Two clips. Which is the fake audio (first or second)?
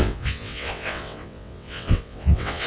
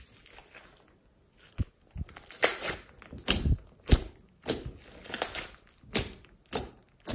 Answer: first